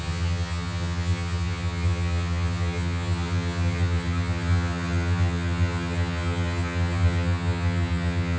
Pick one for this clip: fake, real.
fake